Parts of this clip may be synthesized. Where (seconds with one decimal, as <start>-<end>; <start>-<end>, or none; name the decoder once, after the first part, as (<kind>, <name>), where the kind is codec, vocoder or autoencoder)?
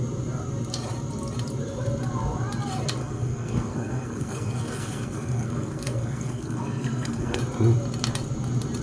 3.0-7.4 (codec, SNAC)